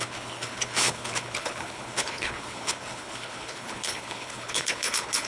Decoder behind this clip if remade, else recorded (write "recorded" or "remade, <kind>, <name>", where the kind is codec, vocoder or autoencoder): remade, codec, HILCodec